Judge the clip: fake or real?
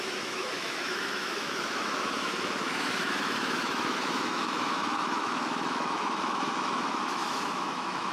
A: fake